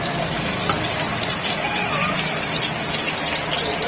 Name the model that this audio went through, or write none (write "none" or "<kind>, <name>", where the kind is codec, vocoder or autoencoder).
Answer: none